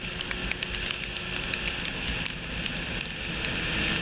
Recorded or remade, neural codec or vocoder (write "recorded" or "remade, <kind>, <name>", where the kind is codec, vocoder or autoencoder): recorded